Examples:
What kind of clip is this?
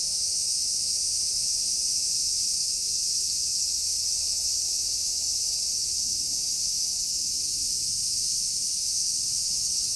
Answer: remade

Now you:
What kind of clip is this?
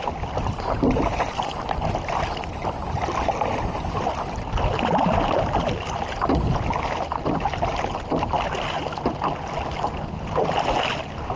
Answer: recorded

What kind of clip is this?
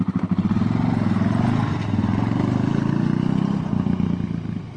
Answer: recorded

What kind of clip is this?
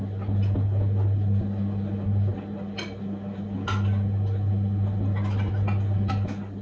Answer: recorded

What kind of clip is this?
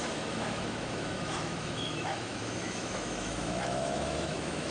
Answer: remade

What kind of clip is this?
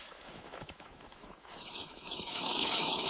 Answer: remade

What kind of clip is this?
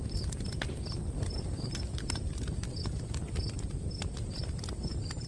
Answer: recorded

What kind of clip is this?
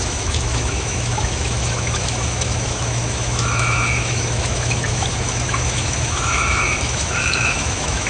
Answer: remade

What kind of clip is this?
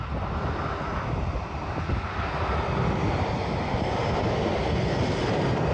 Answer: recorded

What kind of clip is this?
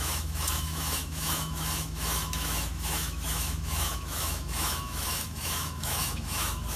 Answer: remade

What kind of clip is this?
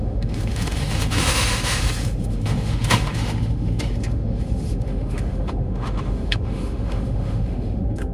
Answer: remade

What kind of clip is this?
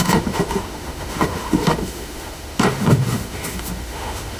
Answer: remade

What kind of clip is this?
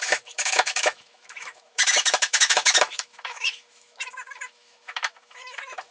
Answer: remade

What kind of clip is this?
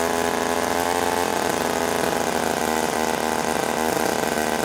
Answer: recorded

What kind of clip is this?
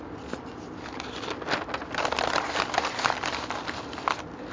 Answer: recorded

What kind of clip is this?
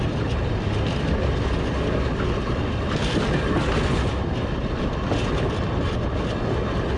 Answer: recorded